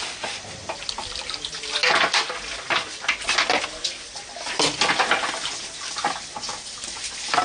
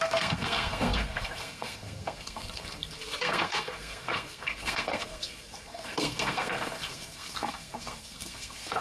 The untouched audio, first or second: first